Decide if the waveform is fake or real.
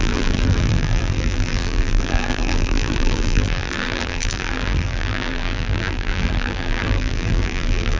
fake